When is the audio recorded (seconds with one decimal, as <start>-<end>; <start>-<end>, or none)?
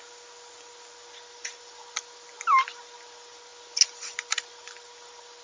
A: 0.0-5.4